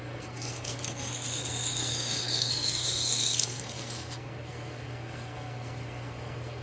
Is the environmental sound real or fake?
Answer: fake